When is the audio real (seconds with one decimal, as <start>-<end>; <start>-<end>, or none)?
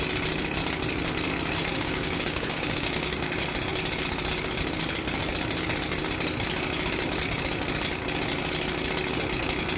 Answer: 0.0-1.7; 3.3-9.8